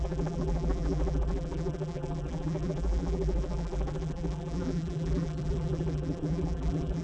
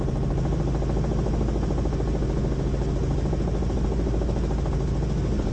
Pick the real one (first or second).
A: second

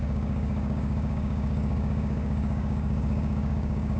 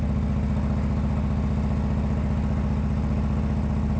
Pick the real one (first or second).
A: second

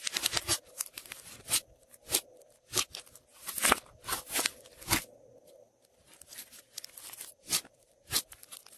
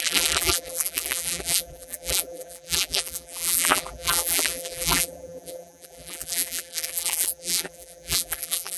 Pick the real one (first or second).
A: first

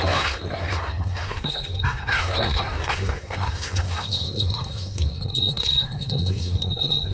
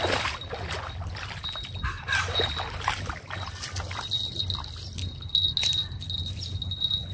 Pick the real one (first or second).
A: second